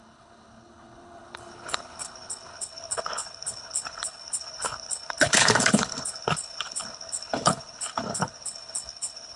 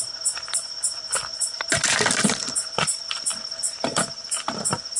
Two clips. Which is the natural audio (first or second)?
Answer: second